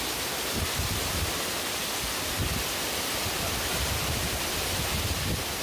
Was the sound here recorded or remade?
recorded